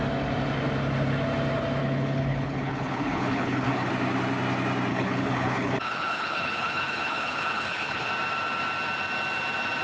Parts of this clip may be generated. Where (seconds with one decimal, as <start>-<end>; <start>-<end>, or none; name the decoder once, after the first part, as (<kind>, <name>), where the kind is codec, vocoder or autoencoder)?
1.8-3.9 (codec, HILCodec); 4.9-8.1